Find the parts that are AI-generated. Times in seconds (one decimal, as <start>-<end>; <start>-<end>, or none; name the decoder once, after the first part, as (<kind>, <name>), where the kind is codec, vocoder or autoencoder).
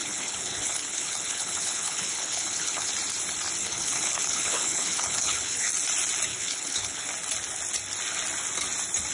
0.0-2.9 (codec, HILCodec); 3.6-5.7; 6.3-7.1